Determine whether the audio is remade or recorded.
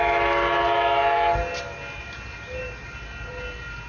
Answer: recorded